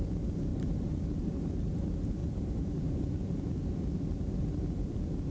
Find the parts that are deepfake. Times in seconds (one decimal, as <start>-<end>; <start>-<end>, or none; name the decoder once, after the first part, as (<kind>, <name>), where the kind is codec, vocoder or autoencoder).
0.5-1.7 (vocoder, BigVGAN v2); 2.2-3.3